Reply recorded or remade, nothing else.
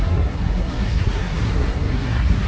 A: remade